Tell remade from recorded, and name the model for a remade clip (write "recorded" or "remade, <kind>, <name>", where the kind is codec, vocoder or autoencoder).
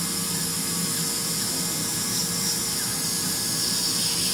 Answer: recorded